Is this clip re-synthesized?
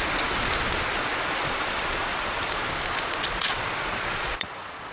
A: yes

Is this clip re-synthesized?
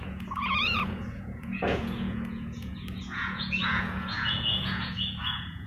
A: yes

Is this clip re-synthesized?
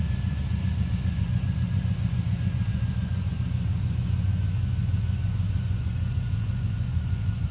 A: yes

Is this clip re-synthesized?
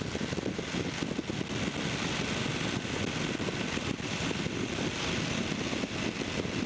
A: no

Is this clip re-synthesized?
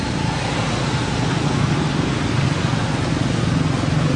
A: no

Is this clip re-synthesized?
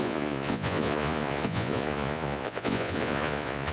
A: yes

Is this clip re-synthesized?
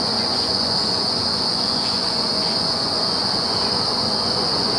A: yes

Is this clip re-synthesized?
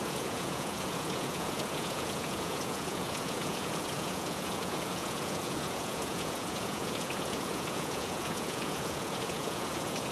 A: yes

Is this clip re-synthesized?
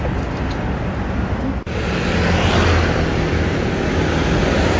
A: no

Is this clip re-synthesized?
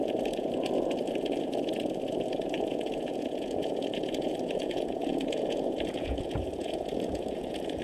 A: yes